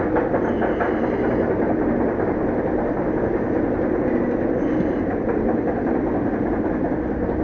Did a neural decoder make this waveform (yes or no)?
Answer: no